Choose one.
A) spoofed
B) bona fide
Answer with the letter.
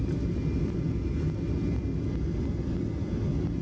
B